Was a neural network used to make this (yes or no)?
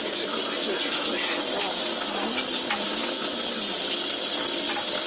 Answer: no